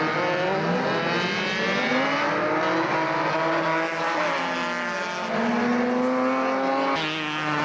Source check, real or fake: real